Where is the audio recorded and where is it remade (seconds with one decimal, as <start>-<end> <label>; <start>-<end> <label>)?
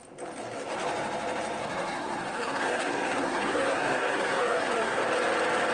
0.0-1.6 recorded; 1.6-5.0 remade; 5.0-5.7 recorded